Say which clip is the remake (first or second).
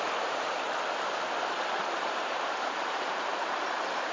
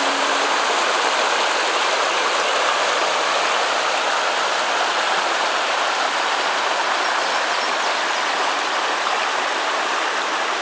first